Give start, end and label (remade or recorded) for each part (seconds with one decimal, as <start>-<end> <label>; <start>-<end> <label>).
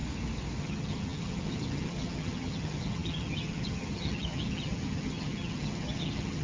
0.0-0.6 recorded; 0.6-6.4 remade